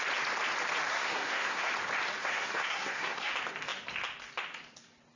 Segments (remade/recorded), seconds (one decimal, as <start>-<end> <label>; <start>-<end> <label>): 0.0-0.9 recorded; 0.9-1.7 remade; 1.7-2.2 recorded; 2.2-3.3 remade; 3.3-5.2 recorded